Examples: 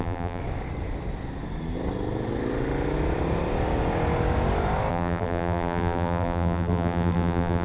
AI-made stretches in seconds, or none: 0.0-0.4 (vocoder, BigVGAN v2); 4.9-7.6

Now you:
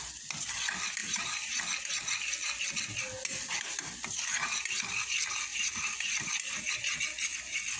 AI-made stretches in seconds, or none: 1.0-1.6 (vocoder, BigVGAN v2); 5.5-6.3

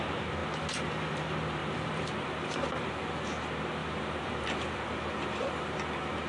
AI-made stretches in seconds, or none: 1.6-2.4 (vocoder, BigVGAN v2); 3.8-4.8

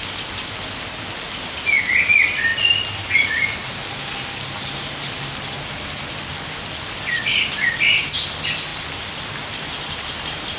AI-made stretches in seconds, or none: 2.5-3.1 (vocoder, BigVGAN v2)